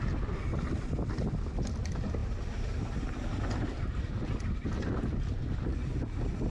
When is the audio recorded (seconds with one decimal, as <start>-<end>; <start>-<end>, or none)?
0.0-6.5